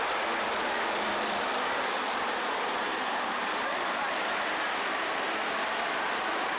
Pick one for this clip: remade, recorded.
remade